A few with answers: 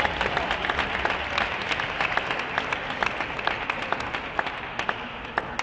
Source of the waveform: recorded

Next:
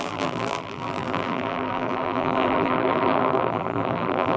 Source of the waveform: remade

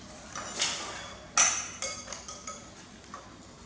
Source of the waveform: recorded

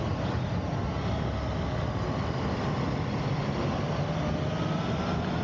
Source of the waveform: recorded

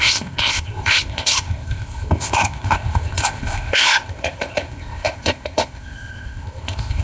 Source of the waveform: remade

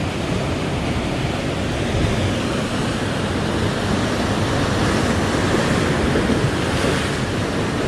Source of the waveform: recorded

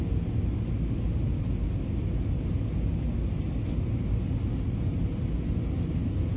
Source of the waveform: recorded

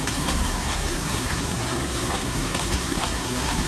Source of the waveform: remade